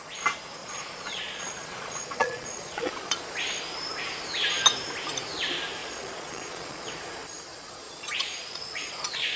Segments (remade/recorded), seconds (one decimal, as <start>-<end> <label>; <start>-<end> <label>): 0.0-0.6 recorded; 0.6-3.3 remade; 3.3-5.8 recorded; 5.8-6.9 remade; 6.9-7.5 recorded; 7.5-9.4 remade